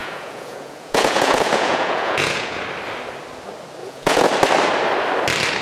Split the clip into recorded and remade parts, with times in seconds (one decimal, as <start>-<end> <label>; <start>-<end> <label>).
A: 0.0-2.6 remade; 2.6-3.8 recorded; 3.8-4.3 remade; 4.3-5.6 recorded